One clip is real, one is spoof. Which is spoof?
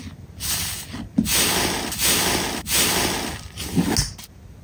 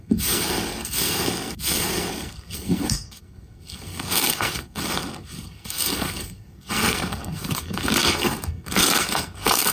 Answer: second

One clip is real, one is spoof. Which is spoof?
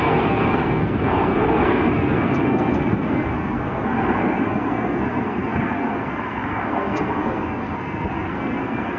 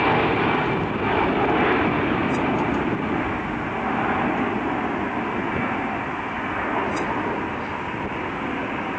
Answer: first